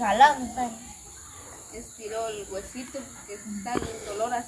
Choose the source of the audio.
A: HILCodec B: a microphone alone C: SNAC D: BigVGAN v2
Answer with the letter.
B